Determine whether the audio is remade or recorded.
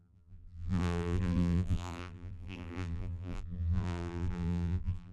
remade